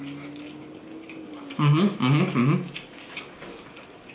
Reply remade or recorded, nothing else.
recorded